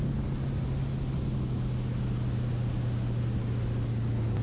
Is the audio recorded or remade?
recorded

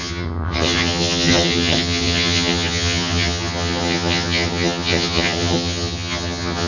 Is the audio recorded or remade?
remade